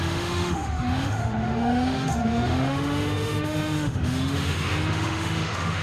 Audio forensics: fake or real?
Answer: fake